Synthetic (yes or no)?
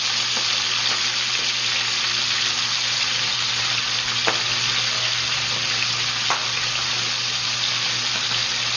no